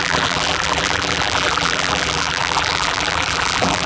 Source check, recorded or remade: remade